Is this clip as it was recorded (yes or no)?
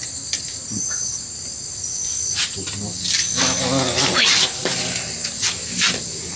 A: yes